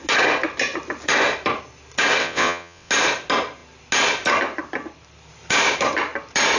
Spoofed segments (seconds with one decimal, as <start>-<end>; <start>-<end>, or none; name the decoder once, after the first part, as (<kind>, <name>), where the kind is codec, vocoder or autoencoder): 2.2-2.9 (vocoder, WaveNeXt)